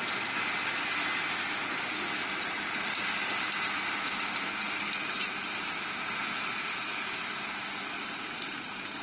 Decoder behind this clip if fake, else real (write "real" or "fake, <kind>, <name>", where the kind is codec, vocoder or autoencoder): real